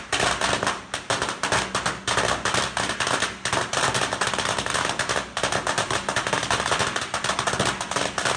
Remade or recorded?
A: recorded